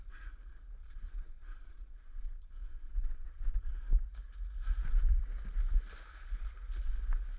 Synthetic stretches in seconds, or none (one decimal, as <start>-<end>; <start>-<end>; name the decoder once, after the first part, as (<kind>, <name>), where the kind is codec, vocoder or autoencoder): 0.8-3.7 (vocoder, Vocos)

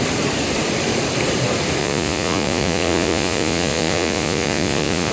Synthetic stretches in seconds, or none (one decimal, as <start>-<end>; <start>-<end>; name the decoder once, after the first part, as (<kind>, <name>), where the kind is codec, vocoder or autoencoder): 1.8-5.1 (vocoder, Vocos)

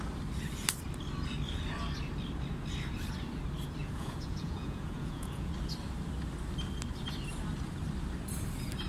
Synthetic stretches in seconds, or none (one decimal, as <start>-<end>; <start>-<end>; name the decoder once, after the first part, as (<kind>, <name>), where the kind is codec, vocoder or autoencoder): 3.8-5.5 (vocoder, Vocos)

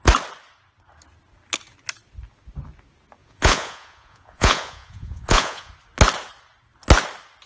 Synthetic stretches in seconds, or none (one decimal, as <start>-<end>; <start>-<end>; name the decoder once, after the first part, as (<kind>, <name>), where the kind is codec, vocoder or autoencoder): 3.2-5.7 (vocoder, Vocos)

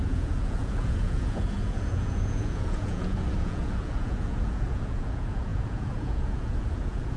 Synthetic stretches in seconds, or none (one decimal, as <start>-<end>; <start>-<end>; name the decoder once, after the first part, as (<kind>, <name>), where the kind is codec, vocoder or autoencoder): 0.0-7.2 (vocoder, Vocos)

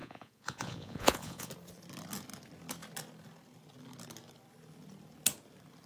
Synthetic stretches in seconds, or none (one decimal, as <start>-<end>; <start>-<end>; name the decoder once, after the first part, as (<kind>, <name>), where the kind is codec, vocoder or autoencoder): 0.0-1.5 (vocoder, Vocos)

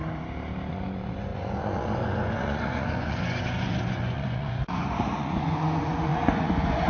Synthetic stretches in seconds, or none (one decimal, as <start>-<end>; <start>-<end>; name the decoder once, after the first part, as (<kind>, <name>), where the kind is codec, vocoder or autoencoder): 0.7-6.9 (vocoder, Vocos)